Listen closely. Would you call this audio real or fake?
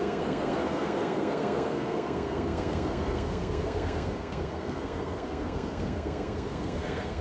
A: fake